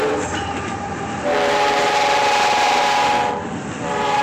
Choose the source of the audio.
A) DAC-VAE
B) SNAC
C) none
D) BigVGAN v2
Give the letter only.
D